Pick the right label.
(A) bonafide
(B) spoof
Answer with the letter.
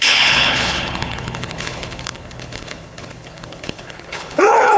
B